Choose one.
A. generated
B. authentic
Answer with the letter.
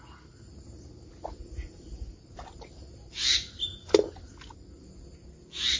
B